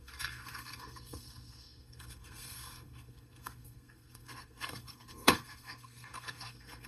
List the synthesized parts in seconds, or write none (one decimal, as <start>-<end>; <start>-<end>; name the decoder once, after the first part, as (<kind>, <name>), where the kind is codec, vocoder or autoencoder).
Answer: 0.0-6.9 (codec, SNAC)